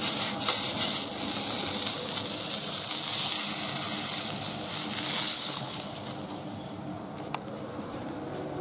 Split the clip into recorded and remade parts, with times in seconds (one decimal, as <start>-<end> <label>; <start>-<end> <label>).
0.0-5.3 recorded; 5.3-5.9 remade; 5.9-8.6 recorded